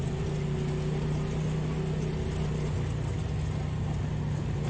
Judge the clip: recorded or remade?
recorded